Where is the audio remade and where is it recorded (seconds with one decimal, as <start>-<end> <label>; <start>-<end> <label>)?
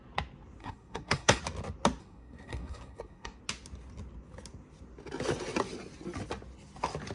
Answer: 0.0-0.6 recorded; 0.6-1.4 remade; 1.4-2.0 recorded; 2.0-3.4 remade; 3.4-7.1 recorded